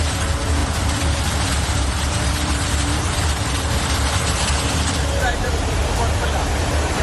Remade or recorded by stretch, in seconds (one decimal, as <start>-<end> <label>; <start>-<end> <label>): 0.0-5.8 remade; 5.8-6.6 recorded; 6.6-7.0 remade